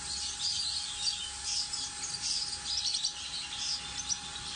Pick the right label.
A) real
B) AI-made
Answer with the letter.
A